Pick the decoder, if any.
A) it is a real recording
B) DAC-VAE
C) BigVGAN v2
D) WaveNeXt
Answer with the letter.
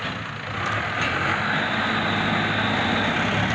A